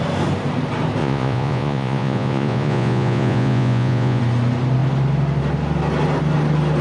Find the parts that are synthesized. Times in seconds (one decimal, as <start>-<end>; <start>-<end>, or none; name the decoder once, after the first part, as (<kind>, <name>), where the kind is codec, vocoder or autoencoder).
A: 1.0-4.2 (vocoder, Vocos)